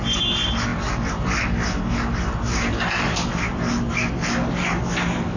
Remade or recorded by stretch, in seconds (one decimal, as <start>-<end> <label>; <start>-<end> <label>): 0.0-5.4 recorded